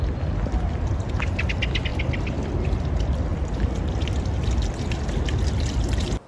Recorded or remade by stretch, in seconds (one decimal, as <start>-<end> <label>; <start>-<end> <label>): 0.0-1.9 recorded; 1.9-2.8 remade; 2.8-6.3 recorded